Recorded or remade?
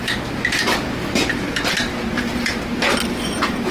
recorded